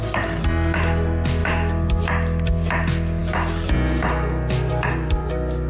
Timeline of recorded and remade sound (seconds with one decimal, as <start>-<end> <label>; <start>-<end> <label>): 0.0-5.7 recorded